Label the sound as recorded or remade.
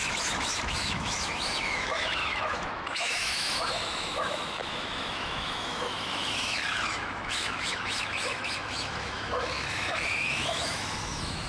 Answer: remade